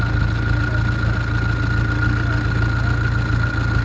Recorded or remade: recorded